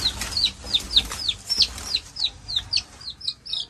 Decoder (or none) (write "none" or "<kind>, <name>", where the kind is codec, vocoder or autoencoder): none